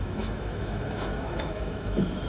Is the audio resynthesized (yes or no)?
yes